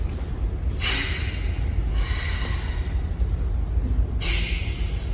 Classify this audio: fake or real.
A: real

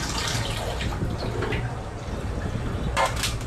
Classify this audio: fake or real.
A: fake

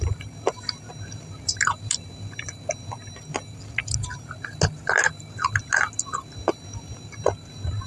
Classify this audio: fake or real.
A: real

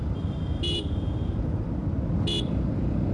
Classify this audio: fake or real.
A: real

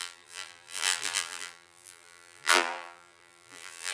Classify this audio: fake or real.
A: fake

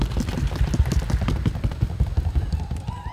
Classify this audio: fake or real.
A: real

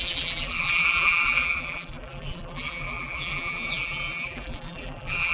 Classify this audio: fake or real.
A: fake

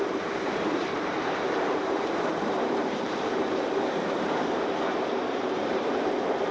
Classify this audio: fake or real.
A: fake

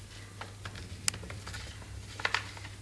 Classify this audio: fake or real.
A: real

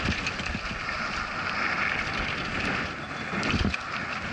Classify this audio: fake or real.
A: real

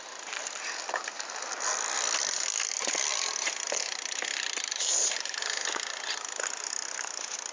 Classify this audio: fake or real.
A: real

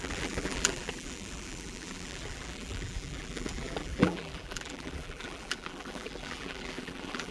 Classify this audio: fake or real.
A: fake